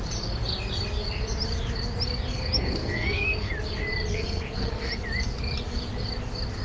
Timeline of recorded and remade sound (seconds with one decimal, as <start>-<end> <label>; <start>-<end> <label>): 0.0-2.8 recorded; 2.8-3.5 remade; 3.5-4.1 recorded; 4.1-4.9 remade; 4.9-6.6 recorded